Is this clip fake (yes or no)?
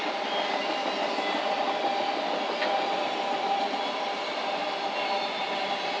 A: no